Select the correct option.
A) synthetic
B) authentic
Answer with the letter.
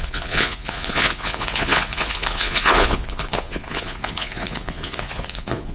A